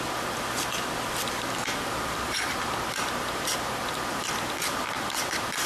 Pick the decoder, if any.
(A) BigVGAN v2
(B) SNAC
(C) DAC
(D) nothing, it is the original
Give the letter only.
A